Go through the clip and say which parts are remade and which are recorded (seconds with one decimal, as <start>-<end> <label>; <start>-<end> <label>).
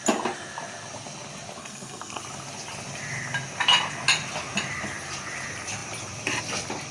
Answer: 0.0-1.6 recorded; 1.6-2.2 remade; 2.2-6.9 recorded